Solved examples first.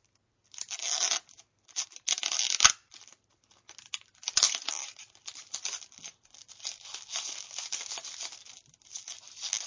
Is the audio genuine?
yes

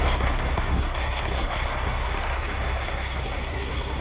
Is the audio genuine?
no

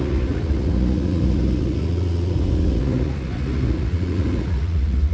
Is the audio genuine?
no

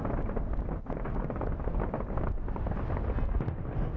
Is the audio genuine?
yes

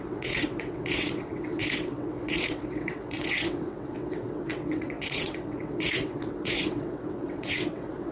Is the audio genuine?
no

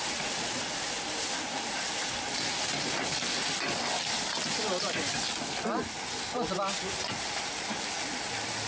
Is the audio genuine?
yes